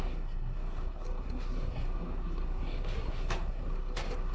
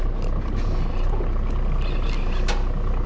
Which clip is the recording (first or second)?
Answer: second